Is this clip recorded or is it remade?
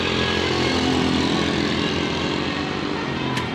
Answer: recorded